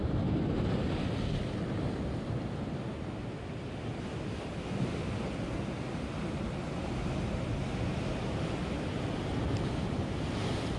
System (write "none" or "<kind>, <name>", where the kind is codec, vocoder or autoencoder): none